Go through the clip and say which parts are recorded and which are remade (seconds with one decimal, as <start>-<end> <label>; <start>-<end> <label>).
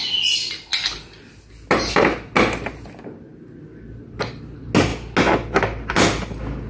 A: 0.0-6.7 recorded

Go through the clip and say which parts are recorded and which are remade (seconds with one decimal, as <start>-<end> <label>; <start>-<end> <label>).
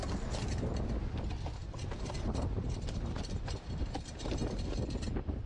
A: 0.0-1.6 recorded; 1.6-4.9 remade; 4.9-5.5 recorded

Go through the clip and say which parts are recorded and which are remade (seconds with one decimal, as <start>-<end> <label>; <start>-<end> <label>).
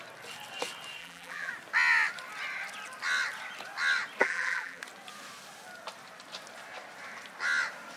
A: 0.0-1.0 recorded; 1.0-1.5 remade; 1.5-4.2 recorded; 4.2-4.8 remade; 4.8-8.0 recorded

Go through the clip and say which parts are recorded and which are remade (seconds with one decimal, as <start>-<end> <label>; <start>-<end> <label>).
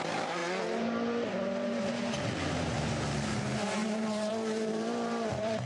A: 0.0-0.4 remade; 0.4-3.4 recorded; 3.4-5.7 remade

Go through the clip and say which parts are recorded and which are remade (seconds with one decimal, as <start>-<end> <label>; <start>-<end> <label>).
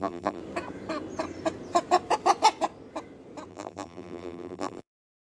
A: 0.0-0.4 remade; 0.4-3.5 recorded; 3.5-5.2 remade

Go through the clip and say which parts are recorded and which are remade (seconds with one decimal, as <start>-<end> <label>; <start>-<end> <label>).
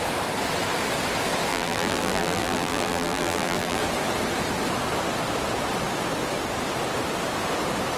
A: 0.0-1.5 recorded; 1.5-3.8 remade; 3.8-8.0 recorded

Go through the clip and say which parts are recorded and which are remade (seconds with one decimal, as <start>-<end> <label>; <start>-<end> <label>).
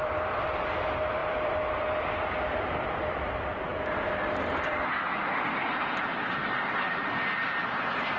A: 0.0-3.7 remade; 3.7-4.3 recorded; 4.3-6.4 remade; 6.4-8.2 recorded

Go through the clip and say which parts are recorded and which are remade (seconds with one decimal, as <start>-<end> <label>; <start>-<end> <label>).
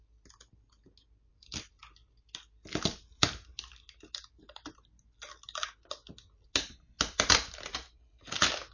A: 0.0-1.3 recorded; 1.3-1.8 remade; 1.8-8.7 recorded